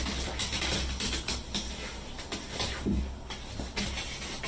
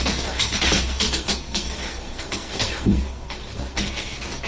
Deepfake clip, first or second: second